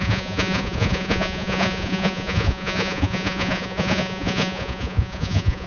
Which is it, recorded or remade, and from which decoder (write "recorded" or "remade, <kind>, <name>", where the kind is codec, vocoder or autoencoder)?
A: remade, vocoder, Vocos